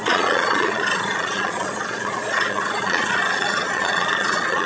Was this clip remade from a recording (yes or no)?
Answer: yes